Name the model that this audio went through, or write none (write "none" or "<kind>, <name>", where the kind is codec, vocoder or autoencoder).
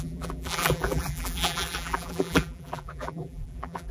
vocoder, BigVGAN v2